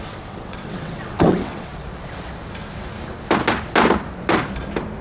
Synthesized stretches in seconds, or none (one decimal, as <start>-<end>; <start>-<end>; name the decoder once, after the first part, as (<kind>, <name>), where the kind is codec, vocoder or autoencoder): 0.0-1.7 (vocoder, WaveNeXt)